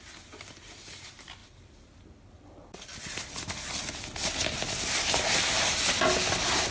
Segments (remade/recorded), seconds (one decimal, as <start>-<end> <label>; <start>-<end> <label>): 0.0-6.7 recorded